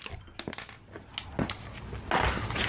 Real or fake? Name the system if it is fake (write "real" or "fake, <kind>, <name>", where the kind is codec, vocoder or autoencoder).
real